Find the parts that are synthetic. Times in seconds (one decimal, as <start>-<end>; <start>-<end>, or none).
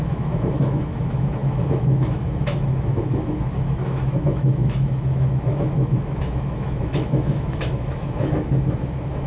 0.0-9.3